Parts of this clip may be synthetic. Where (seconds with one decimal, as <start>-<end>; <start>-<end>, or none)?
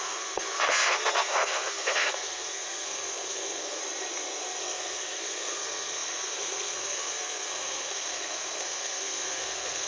0.0-3.8; 4.6-9.9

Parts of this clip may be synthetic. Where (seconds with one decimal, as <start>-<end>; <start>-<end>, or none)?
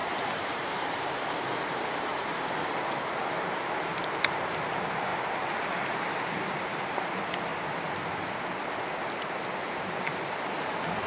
0.0-1.6; 2.1-3.2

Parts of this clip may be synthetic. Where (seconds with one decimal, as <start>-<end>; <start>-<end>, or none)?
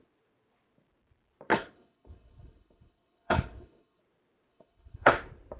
1.5-4.0; 4.5-5.1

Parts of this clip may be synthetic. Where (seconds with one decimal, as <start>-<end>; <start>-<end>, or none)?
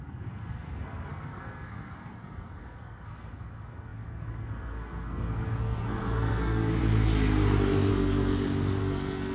0.0-6.8; 7.9-8.3; 8.8-9.3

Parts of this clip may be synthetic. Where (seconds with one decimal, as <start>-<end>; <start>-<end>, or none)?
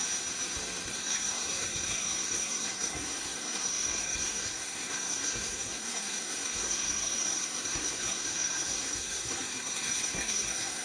0.9-10.8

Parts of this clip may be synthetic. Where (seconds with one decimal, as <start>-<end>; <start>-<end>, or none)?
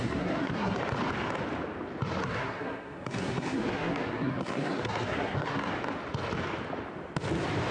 0.0-0.8; 2.2-5.7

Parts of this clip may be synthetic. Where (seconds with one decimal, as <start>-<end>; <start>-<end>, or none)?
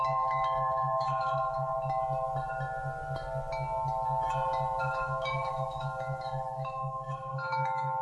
0.0-1.7; 4.8-8.0